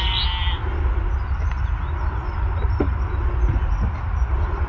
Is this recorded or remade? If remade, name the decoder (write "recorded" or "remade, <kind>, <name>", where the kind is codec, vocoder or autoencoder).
recorded